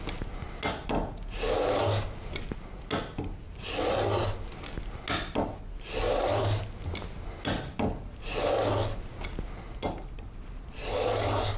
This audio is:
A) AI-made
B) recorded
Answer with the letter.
B